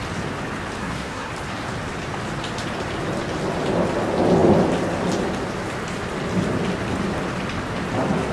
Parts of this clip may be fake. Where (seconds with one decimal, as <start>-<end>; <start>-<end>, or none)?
0.8-1.3